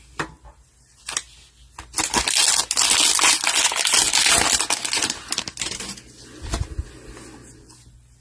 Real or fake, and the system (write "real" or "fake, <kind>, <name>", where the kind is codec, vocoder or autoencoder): real